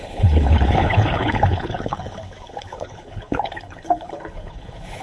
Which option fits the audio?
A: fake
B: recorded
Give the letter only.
A